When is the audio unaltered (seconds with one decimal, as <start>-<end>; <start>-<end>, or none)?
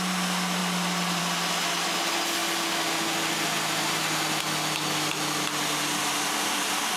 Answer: 0.0-7.0